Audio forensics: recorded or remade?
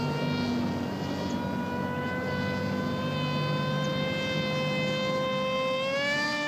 recorded